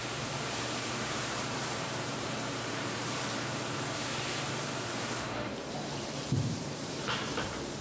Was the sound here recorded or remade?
remade